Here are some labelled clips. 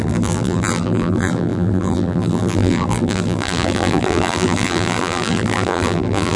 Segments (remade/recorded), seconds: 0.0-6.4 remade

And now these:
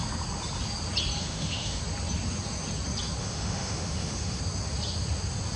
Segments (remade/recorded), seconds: 0.0-1.2 recorded; 1.2-1.8 remade; 1.8-3.2 recorded; 3.2-4.4 remade; 4.4-5.6 recorded

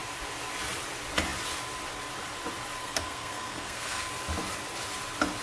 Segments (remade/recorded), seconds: 0.0-2.8 recorded; 2.8-4.1 remade; 4.1-5.4 recorded

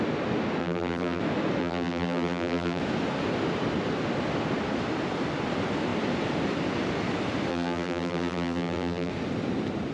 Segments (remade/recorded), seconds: 0.0-0.6 recorded; 0.6-1.2 remade; 1.2-1.6 recorded; 1.6-2.8 remade; 2.8-7.5 recorded; 7.5-9.1 remade; 9.1-9.9 recorded

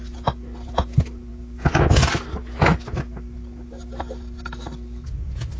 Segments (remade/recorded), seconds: 0.0-5.6 recorded